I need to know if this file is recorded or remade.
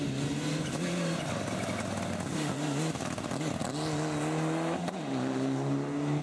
recorded